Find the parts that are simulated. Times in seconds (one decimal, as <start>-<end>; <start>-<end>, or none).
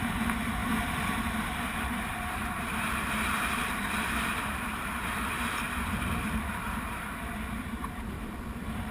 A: 0.0-8.9